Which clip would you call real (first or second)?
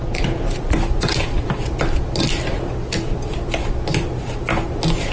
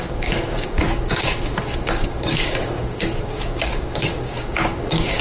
first